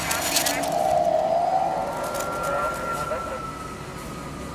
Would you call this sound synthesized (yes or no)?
no